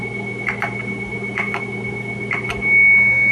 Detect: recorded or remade recorded